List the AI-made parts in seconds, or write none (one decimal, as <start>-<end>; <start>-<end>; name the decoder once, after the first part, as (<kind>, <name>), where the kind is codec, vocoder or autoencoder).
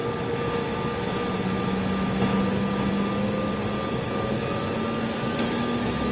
none